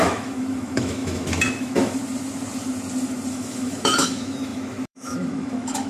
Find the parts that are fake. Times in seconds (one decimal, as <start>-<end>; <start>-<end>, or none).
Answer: 0.0-2.0; 3.3-5.9

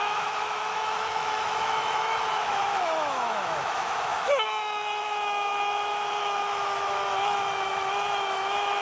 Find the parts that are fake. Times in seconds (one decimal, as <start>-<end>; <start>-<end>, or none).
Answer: 0.0-8.8

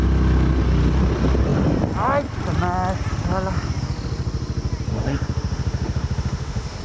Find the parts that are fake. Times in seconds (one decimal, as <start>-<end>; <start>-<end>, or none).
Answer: 4.9-6.8

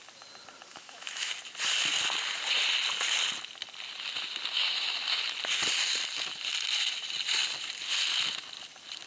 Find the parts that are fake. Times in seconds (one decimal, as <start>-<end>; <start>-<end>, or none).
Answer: 0.7-1.3